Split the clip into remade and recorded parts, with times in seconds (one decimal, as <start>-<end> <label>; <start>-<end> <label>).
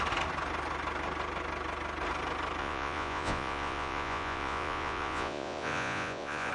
0.0-2.6 recorded; 2.6-6.5 remade